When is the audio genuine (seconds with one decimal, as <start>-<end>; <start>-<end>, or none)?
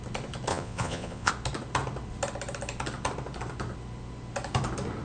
0.0-0.5; 1.3-5.0